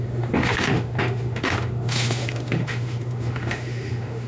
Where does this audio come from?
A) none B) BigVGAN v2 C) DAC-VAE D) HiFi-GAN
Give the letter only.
C